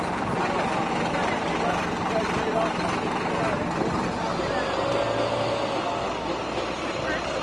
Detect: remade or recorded recorded